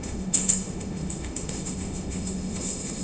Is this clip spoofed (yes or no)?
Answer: yes